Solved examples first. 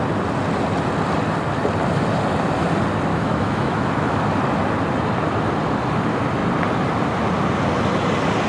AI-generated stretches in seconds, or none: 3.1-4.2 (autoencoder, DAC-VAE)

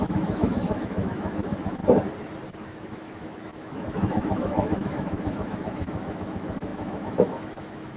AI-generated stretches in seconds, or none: 0.0-1.8 (autoencoder, DAC-VAE); 2.5-8.0

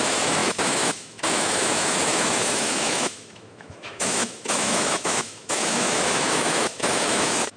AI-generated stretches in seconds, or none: 0.0-7.6 (autoencoder, DAC-VAE)

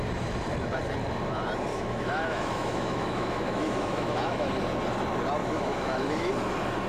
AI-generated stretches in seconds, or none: 1.7-4.5 (autoencoder, DAC-VAE); 5.4-6.3

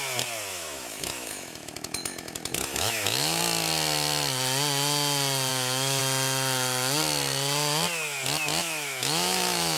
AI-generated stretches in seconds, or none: 0.5-3.4 (autoencoder, DAC-VAE); 5.5-6.0; 8.6-9.8

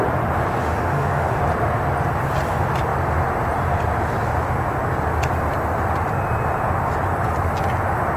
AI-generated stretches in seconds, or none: 0.6-1.4 (autoencoder, DAC-VAE)

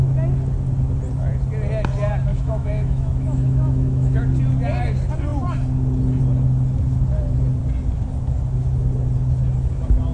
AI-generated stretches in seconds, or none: 2.3-4.2 (autoencoder, DAC-VAE)